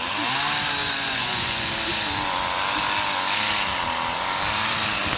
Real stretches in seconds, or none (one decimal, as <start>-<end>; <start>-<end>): 0.0-0.8; 1.7-5.2